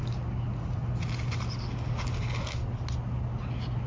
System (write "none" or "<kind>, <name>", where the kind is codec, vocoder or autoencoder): none